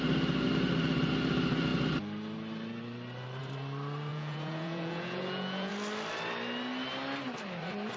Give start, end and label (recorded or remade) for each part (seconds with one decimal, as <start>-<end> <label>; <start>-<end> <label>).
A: 0.0-4.1 recorded; 4.1-5.7 remade; 5.7-8.0 recorded